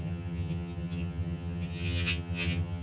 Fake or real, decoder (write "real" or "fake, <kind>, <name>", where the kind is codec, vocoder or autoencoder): fake, vocoder, HiFi-GAN